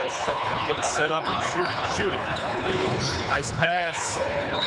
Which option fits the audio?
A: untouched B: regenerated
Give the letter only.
B